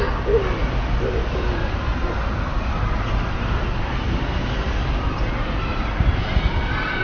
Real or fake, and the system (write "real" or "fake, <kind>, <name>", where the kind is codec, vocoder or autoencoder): real